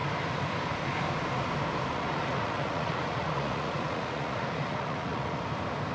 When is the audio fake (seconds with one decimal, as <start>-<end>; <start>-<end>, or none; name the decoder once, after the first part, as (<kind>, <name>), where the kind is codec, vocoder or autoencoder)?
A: 1.9-5.4 (vocoder, Vocos)